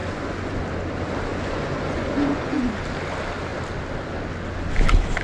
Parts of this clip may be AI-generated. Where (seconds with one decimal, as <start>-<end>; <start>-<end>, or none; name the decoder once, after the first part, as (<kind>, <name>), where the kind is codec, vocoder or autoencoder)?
0.0-0.6 (vocoder, Vocos); 1.3-2.7